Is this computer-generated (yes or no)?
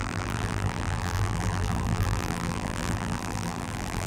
yes